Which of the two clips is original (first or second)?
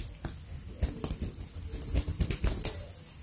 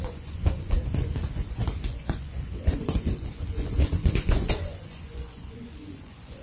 first